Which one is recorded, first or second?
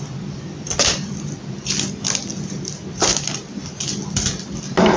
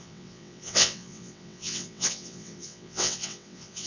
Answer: first